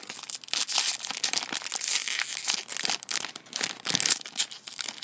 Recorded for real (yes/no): yes